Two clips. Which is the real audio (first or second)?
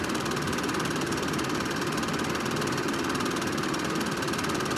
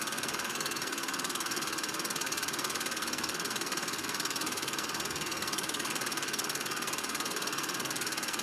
first